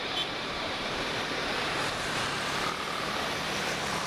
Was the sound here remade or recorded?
remade